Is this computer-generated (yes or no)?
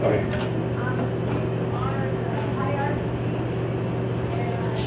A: no